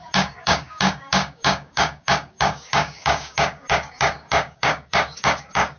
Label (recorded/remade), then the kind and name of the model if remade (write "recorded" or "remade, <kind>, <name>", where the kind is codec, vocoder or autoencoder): remade, codec, DAC